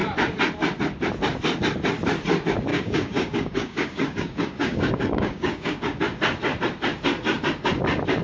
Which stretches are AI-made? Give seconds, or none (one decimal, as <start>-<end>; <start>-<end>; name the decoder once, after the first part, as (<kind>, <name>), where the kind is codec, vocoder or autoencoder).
2.7-6.0 (codec, DAC)